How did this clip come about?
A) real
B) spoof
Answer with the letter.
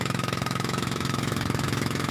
B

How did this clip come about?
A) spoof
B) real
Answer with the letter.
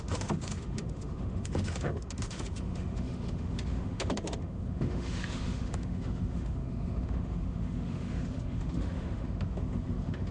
A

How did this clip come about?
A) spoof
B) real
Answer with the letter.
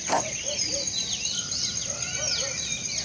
B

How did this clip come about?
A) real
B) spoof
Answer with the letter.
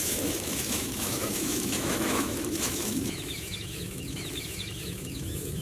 B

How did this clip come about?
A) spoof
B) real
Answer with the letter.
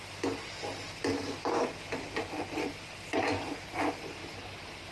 B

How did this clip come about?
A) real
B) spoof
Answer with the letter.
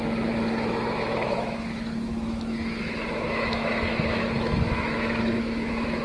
B